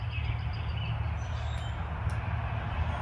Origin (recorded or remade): recorded